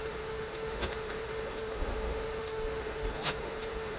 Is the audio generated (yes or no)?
yes